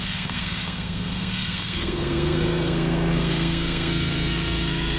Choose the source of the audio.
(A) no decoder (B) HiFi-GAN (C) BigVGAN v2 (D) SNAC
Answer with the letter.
D